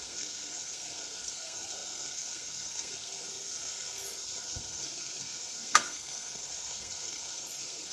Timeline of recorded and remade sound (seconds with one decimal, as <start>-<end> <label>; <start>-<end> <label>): 0.0-7.9 remade